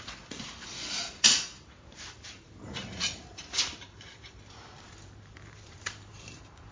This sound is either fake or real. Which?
fake